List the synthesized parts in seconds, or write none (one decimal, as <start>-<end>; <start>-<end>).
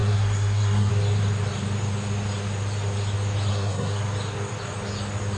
0.0-0.9; 3.5-4.0